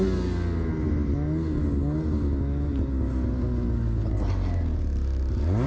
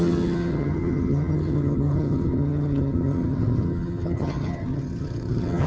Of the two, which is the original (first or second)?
first